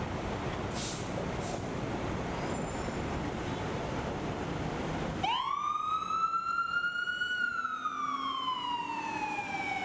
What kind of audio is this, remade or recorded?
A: recorded